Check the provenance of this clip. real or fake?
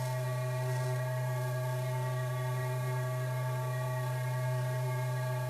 fake